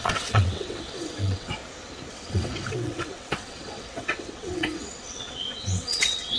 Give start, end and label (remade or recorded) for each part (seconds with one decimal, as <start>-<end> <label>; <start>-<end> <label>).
0.0-1.6 remade; 1.6-2.1 recorded; 2.1-6.4 remade